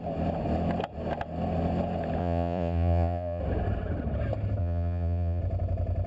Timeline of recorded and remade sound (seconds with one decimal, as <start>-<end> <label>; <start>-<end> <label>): 0.0-2.2 recorded; 2.2-3.4 remade; 3.4-4.6 recorded; 4.6-5.4 remade; 5.4-6.1 recorded